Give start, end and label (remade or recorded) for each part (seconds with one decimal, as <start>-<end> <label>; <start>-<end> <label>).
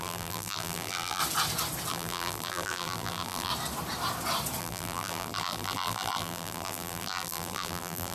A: 0.0-1.2 remade; 1.2-1.9 recorded; 1.9-3.5 remade; 3.5-4.6 recorded; 4.6-8.1 remade